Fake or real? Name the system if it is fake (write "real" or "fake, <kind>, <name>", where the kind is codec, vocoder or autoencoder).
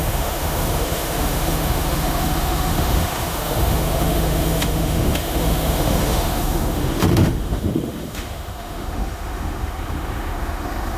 fake, autoencoder, DAC-VAE